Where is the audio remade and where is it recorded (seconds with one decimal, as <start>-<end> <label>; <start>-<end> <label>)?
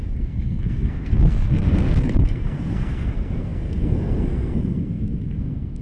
0.0-5.8 remade